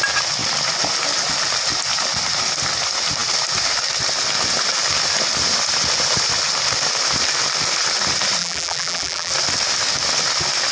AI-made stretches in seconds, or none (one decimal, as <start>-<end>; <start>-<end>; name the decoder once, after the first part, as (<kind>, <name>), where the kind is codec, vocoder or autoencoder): 8.4-9.3 (vocoder, BigVGAN v2)